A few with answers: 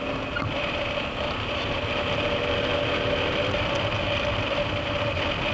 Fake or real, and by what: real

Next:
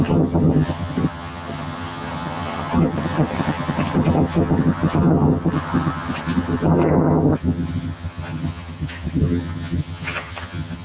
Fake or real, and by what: fake, vocoder, HiFi-GAN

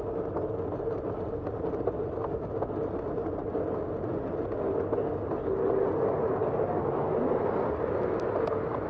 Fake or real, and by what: real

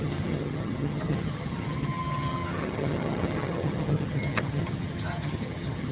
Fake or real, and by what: fake, vocoder, HiFi-GAN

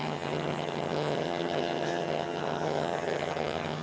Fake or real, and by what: fake, vocoder, HiFi-GAN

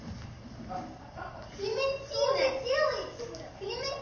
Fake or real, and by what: real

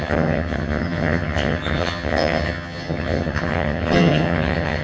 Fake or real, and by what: fake, vocoder, HiFi-GAN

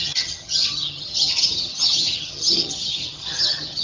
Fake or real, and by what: fake, vocoder, HiFi-GAN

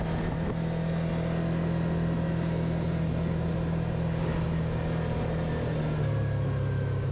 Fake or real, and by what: real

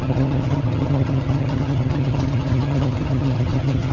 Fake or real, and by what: fake, vocoder, HiFi-GAN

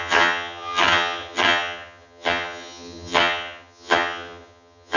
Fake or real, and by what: fake, vocoder, HiFi-GAN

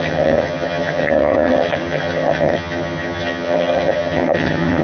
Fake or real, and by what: fake, vocoder, HiFi-GAN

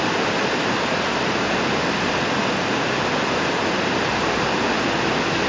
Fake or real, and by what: real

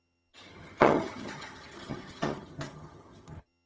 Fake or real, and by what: fake, vocoder, HiFi-GAN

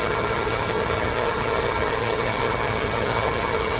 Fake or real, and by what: fake, vocoder, HiFi-GAN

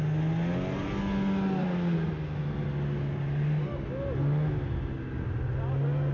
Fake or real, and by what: real